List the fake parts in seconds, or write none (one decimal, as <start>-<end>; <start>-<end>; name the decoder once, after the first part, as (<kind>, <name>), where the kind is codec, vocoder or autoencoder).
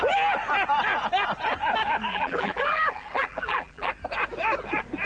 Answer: 2.1-3.9 (vocoder, BigVGAN v2)